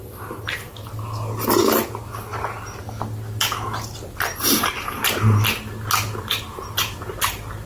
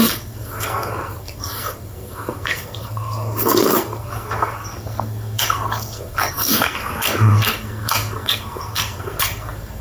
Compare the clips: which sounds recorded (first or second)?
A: first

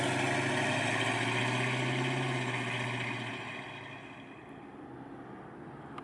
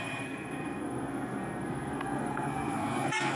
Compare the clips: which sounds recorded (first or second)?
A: first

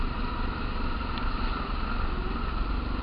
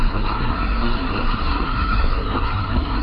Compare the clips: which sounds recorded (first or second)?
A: first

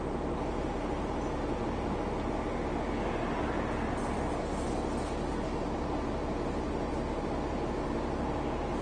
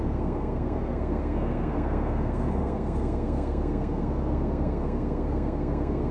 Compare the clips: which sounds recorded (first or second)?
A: first